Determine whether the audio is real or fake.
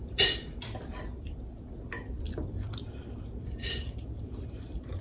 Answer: fake